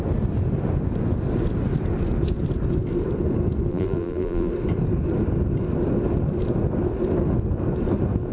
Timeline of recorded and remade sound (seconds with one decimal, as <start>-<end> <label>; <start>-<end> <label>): 0.0-3.7 recorded; 3.7-4.5 remade; 4.5-8.3 recorded